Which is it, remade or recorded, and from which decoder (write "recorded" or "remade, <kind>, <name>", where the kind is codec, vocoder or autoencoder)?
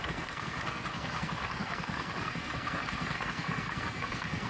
remade, codec, SNAC